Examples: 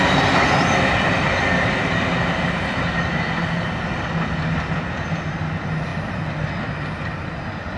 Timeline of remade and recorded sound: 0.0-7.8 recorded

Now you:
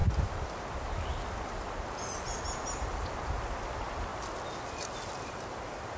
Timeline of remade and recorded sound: 0.0-3.6 remade; 3.6-4.1 recorded; 4.1-5.5 remade; 5.5-6.0 recorded

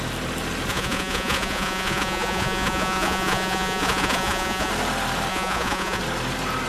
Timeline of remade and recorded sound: 0.0-0.7 recorded; 0.7-4.7 remade; 4.7-5.3 recorded; 5.3-6.0 remade; 6.0-6.7 recorded

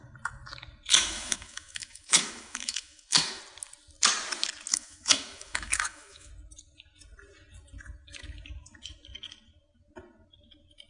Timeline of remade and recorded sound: 0.0-0.9 recorded; 0.9-3.4 remade; 3.4-4.7 recorded; 4.7-6.3 remade; 6.3-10.9 recorded

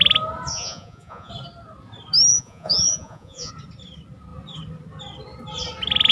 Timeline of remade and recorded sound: 0.0-0.5 recorded; 0.5-1.3 remade; 1.3-2.3 recorded; 2.3-3.5 remade; 3.5-6.1 recorded